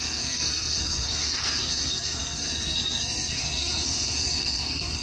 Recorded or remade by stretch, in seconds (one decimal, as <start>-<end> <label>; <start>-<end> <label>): 0.0-5.0 remade

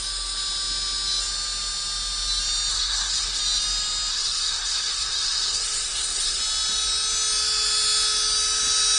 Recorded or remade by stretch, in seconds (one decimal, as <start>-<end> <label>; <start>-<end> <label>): 0.0-2.7 recorded; 2.7-3.4 remade; 3.4-4.1 recorded; 4.1-6.4 remade; 6.4-9.0 recorded

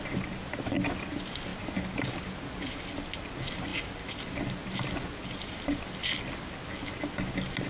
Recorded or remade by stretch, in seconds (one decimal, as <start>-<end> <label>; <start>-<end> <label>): 0.0-7.7 recorded

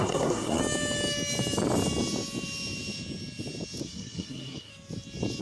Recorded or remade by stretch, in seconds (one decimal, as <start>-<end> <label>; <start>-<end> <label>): 0.0-0.6 remade; 0.6-3.8 recorded; 3.8-4.7 remade; 4.7-5.4 recorded

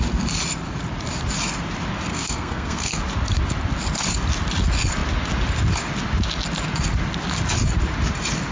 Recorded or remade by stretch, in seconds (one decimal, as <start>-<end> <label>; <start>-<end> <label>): 0.0-2.1 recorded; 2.1-3.0 remade; 3.0-8.5 recorded